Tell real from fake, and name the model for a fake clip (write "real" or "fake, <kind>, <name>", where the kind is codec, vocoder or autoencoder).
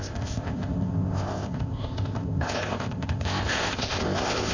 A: fake, codec, ZipCodec